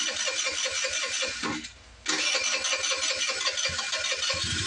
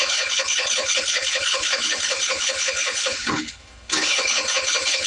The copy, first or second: second